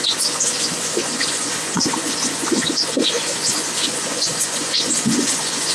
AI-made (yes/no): yes